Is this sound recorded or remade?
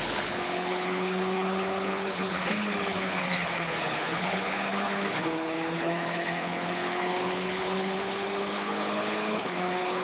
remade